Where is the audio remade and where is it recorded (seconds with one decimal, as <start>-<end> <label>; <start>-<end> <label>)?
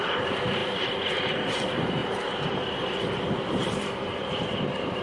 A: 0.0-2.0 recorded; 2.0-5.0 remade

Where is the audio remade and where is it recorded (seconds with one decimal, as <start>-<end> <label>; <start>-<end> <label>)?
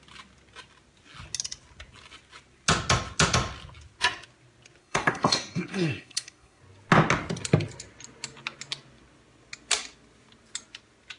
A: 0.0-4.8 recorded; 4.8-6.6 remade; 6.6-11.2 recorded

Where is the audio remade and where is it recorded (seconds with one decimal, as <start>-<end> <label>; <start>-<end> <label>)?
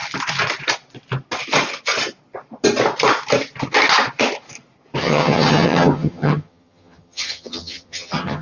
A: 0.0-5.0 recorded; 5.0-8.4 remade